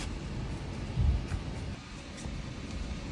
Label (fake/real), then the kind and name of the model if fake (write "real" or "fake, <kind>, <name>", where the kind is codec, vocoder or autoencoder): real